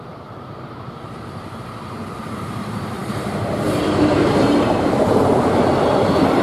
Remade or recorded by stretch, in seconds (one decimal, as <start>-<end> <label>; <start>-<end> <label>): 0.0-6.4 remade